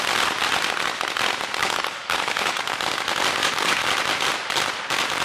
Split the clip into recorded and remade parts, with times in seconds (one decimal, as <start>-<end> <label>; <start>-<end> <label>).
0.0-1.6 recorded; 1.6-2.7 remade; 2.7-3.4 recorded; 3.4-3.9 remade; 3.9-5.2 recorded